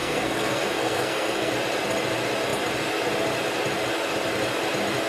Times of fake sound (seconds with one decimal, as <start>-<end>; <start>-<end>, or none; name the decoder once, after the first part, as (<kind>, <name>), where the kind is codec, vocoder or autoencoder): 0.0-1.5 (codec, SNAC)